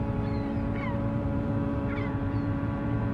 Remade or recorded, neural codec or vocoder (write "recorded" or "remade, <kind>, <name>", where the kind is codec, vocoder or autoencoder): remade, vocoder, BigVGAN v2